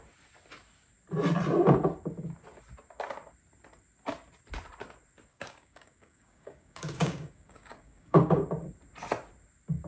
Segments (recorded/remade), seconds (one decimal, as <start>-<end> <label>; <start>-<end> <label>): 0.0-5.3 recorded; 5.3-8.4 remade; 8.4-9.9 recorded